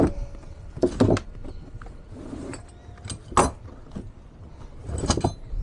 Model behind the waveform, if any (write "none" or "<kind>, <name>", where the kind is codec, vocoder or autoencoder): none